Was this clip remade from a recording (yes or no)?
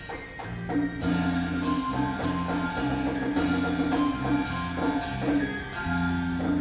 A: no